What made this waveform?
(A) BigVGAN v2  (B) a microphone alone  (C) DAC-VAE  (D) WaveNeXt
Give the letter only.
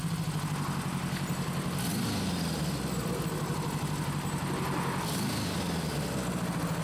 B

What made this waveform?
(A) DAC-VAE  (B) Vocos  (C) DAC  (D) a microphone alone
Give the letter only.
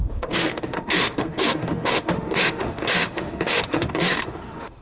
A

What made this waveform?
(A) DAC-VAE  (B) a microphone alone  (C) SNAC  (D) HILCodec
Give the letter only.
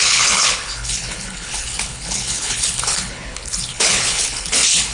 D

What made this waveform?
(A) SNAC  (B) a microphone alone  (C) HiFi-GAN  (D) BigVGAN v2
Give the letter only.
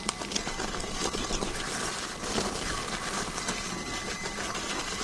B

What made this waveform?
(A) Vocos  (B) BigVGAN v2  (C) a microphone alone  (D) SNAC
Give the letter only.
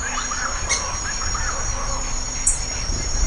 C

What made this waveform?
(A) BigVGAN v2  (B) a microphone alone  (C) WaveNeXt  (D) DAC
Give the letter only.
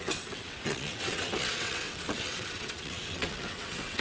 C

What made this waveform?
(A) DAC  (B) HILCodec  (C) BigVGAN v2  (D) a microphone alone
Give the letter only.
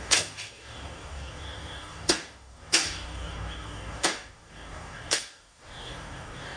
A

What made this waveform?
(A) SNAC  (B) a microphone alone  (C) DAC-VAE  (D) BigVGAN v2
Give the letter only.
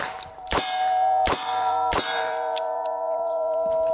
D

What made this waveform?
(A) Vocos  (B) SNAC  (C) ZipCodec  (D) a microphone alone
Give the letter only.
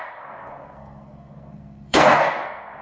B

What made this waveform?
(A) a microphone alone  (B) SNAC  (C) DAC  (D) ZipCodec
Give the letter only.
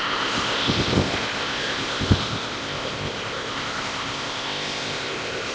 D